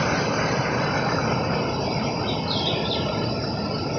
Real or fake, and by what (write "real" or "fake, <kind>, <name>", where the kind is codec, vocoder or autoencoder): real